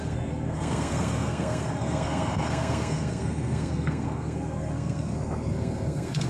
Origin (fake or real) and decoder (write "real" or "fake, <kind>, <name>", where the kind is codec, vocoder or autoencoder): fake, codec, SNAC